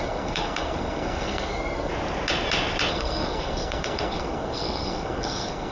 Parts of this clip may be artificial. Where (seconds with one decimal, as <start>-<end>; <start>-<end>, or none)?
0.0-1.9; 2.9-5.7

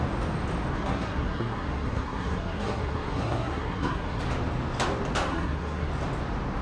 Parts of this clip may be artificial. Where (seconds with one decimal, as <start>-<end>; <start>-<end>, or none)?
0.7-4.2; 5.3-5.9

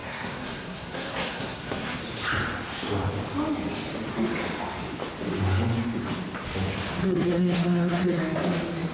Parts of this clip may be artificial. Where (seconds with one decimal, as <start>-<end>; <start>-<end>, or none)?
0.0-2.0; 7.0-8.2

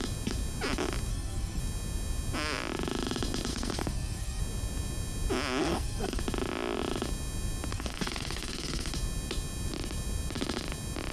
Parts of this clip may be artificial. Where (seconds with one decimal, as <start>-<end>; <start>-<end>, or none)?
1.1-1.6; 3.5-4.4; 5.6-6.2; 7.7-8.9

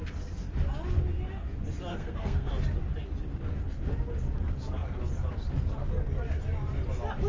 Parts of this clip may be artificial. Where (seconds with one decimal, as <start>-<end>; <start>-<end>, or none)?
1.9-2.5

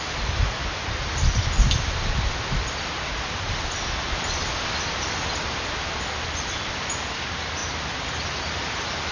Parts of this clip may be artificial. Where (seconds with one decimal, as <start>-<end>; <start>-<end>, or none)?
none

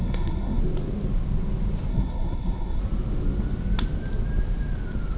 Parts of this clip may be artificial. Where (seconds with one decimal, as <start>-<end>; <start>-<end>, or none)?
0.0-0.6; 1.9-2.8

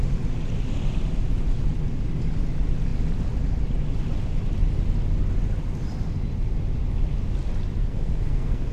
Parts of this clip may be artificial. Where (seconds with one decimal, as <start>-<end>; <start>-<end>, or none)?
7.8-8.7